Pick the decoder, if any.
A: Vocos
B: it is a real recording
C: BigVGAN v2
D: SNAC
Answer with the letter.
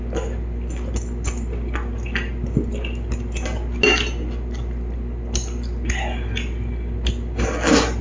B